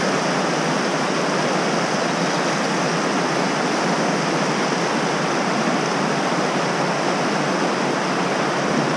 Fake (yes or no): no